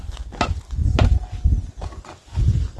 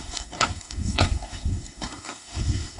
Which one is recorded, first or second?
first